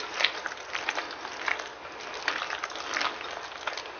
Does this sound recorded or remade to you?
recorded